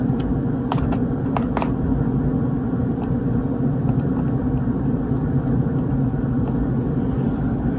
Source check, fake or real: real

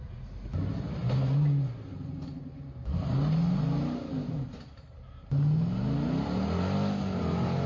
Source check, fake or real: real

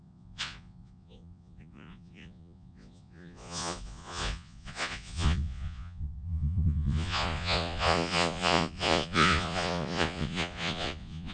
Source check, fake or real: fake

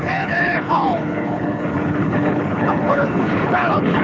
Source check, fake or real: fake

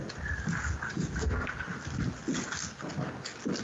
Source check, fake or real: real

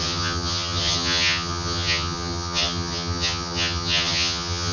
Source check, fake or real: fake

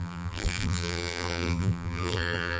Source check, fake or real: fake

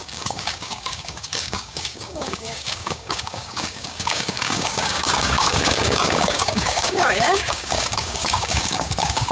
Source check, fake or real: fake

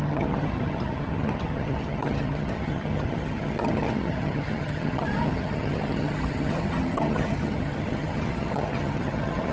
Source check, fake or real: fake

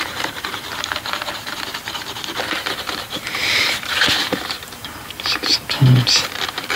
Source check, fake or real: fake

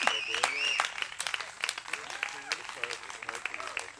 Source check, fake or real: real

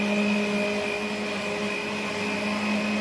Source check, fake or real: real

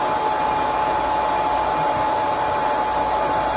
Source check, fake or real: real